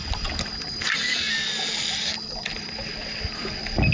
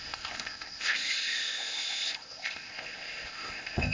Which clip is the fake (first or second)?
second